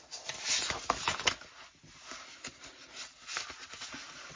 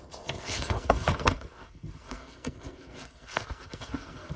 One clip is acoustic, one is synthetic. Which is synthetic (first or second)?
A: second